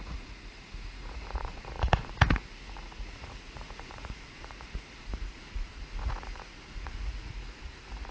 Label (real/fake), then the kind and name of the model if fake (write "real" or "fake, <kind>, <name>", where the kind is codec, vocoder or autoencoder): fake, vocoder, Vocos